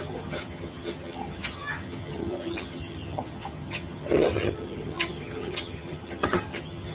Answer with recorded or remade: remade